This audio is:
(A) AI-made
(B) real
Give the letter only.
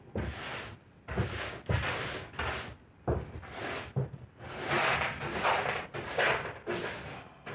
B